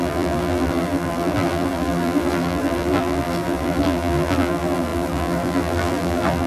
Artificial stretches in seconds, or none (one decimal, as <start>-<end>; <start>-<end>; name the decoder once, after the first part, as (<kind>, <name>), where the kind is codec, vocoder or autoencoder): 0.0-6.5 (vocoder, BigVGAN v2)